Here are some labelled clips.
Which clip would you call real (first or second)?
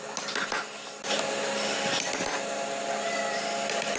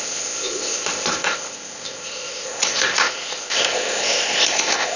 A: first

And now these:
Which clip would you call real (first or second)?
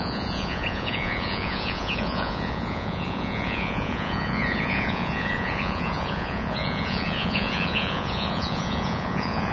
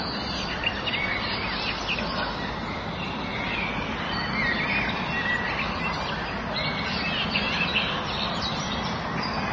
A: second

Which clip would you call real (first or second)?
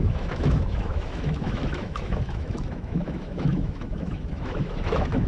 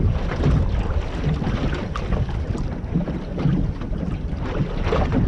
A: second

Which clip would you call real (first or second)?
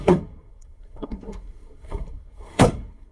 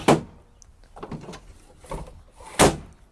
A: second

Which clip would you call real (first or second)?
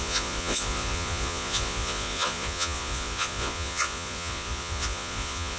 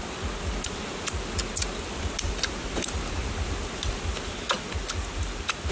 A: second